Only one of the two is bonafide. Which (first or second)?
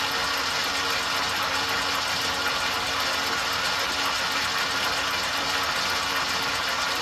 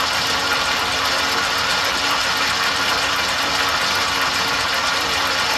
first